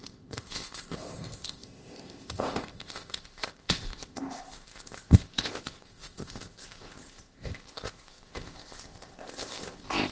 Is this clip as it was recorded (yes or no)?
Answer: no